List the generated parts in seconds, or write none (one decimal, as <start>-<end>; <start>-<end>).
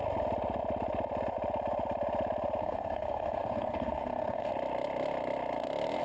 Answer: 2.6-4.5